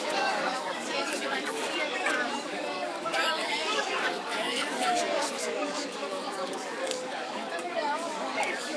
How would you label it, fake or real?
fake